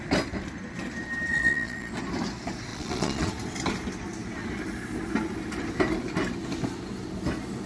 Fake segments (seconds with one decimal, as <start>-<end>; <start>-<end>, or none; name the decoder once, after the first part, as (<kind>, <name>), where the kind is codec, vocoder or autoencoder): 1.3-1.9 (vocoder, Vocos); 2.7-3.3